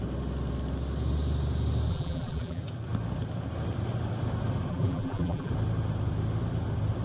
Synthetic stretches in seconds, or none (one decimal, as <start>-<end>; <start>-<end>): 1.9-2.6; 4.7-5.5